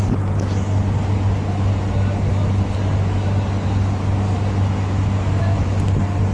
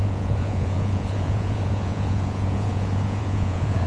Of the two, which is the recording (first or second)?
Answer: first